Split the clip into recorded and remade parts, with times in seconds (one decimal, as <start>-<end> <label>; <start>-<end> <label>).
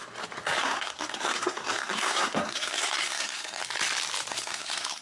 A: 0.0-0.6 recorded; 0.6-3.6 remade; 3.6-4.3 recorded; 4.3-5.0 remade